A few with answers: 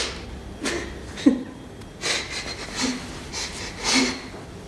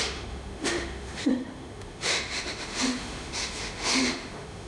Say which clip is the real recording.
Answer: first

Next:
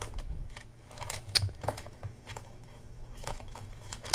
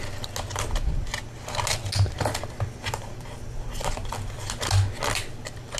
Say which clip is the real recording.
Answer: second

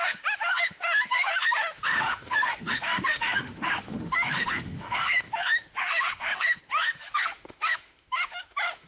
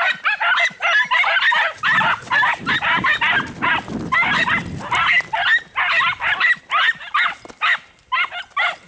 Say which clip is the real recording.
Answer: second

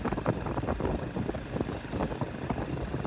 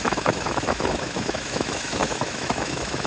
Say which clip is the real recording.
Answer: first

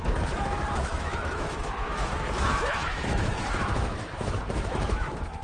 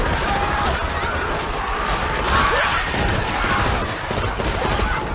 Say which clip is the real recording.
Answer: second